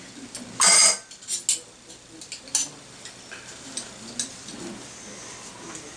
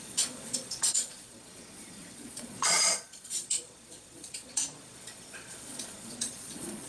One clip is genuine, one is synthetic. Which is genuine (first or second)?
first